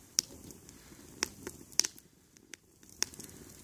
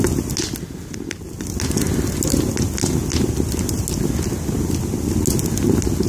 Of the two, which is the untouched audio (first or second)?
second